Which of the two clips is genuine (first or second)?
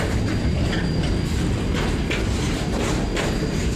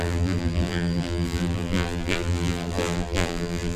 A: first